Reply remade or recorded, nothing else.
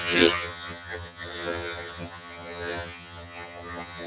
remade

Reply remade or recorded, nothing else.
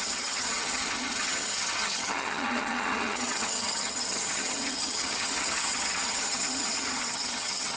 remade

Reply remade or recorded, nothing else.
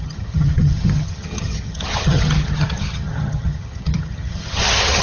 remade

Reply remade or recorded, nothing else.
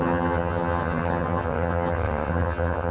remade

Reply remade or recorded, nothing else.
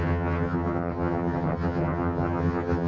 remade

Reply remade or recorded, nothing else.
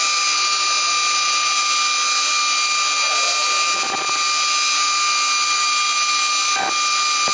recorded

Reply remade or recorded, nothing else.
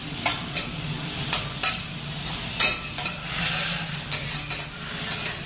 recorded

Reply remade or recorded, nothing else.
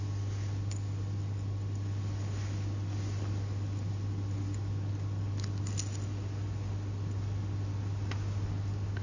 recorded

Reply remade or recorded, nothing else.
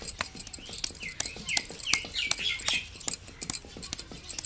recorded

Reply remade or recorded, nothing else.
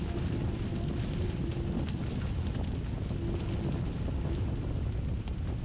recorded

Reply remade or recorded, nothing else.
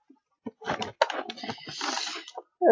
recorded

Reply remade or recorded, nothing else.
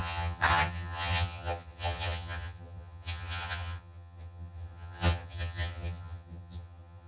remade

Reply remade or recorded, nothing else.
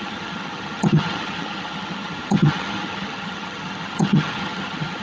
remade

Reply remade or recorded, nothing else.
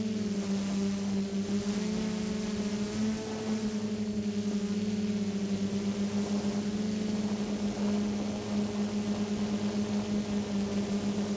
recorded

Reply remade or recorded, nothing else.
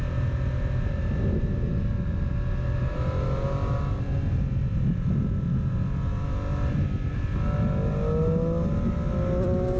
recorded